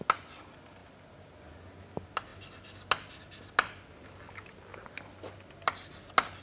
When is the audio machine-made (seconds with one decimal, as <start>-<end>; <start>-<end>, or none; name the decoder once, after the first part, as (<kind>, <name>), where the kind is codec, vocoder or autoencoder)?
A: none